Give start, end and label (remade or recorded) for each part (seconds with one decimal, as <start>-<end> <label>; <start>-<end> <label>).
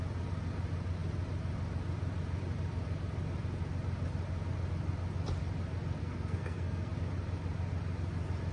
0.0-6.0 recorded; 6.0-6.9 remade; 6.9-8.5 recorded